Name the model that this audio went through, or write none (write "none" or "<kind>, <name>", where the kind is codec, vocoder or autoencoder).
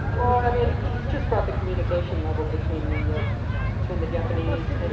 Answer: none